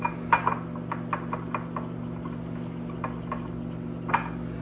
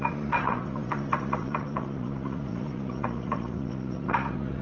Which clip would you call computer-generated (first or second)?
second